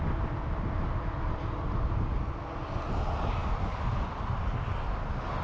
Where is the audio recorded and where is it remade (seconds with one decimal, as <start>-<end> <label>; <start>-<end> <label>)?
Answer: 0.0-5.4 recorded